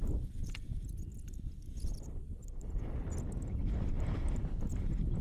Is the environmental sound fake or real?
fake